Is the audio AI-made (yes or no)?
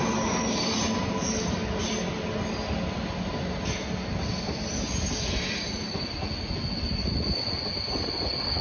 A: no